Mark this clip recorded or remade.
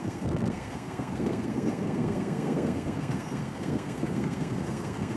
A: remade